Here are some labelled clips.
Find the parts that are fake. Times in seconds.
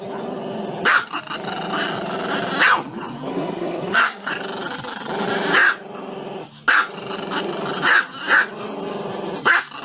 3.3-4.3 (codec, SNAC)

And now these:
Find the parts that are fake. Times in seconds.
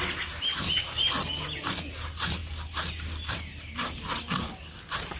none